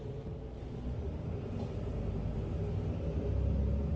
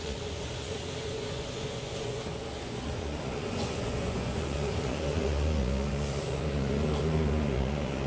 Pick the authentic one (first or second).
first